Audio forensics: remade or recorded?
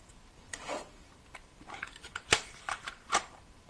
remade